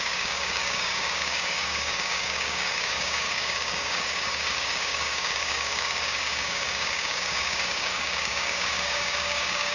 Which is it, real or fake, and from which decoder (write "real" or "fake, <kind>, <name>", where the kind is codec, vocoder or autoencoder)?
fake, codec, DAC